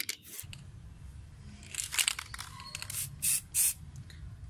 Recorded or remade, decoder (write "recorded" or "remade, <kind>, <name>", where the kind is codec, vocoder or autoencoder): recorded